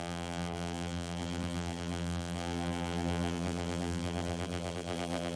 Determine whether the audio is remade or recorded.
remade